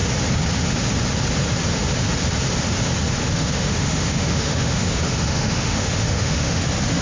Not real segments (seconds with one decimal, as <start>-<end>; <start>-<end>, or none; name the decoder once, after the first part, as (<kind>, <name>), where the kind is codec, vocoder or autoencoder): 3.2-6.6 (autoencoder, DAC-VAE)

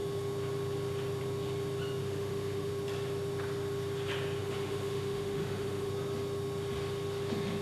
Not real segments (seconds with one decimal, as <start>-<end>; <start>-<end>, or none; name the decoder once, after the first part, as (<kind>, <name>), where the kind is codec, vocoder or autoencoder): 2.0-2.7 (autoencoder, DAC-VAE); 4.4-5.9

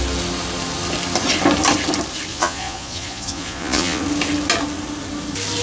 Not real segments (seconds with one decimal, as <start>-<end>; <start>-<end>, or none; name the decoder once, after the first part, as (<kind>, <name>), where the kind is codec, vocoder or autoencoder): 2.3-4.0 (vocoder, Vocos)

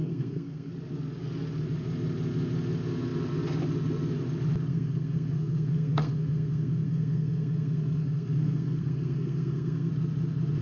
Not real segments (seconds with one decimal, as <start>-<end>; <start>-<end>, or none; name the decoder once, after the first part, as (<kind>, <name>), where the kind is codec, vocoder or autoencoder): 0.0-0.7 (codec, SNAC); 4.7-9.9

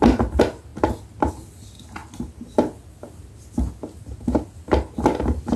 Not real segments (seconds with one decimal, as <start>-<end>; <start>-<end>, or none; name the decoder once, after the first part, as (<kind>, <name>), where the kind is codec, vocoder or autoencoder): none